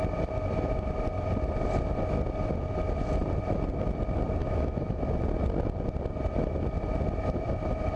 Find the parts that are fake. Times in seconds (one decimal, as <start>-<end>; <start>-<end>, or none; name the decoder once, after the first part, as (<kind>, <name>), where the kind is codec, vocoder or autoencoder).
4.4-5.0 (autoencoder, DAC-VAE)